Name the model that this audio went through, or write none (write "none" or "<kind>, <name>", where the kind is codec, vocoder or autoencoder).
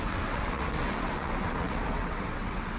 vocoder, WaveNeXt